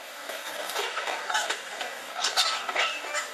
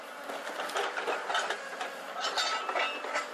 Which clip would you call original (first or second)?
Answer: second